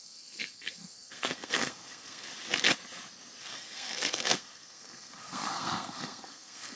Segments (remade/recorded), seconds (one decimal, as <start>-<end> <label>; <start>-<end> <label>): 0.0-2.3 remade; 2.3-3.4 recorded; 3.4-6.8 remade